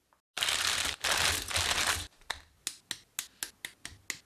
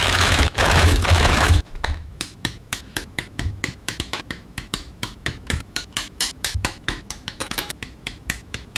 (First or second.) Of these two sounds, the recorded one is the first